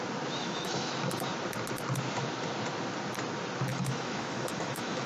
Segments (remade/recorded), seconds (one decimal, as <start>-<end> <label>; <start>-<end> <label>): 0.0-0.4 recorded; 0.4-0.9 remade; 0.9-3.7 recorded; 3.7-5.1 remade